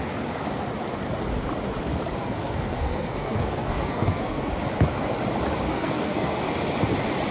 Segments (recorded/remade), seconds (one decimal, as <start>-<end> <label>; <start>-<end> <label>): 0.0-2.2 recorded; 2.2-4.5 remade; 4.5-5.7 recorded; 5.7-6.4 remade; 6.4-7.3 recorded